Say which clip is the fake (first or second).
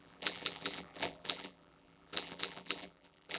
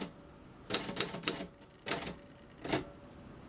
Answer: first